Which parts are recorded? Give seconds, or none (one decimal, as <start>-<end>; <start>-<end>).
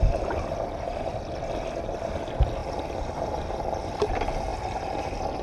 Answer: 0.0-5.4